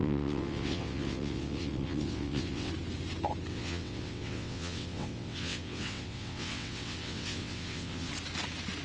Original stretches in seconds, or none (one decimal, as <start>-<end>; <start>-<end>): 2.7-3.5; 8.1-8.8